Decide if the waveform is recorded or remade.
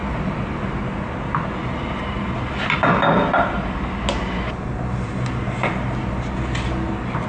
recorded